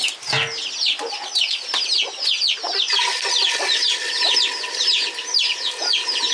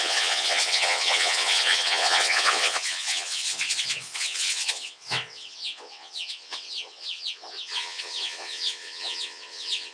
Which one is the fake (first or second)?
second